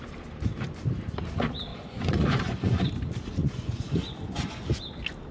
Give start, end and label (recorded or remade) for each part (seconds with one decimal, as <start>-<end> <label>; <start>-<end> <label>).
0.0-1.7 recorded; 1.7-2.9 remade; 2.9-3.4 recorded; 3.4-4.8 remade; 4.8-5.3 recorded